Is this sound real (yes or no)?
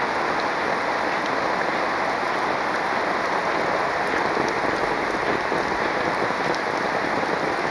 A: yes